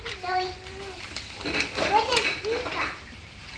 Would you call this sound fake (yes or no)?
yes